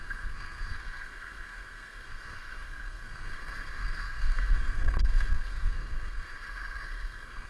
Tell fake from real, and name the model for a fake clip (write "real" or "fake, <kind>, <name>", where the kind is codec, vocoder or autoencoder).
fake, codec, SNAC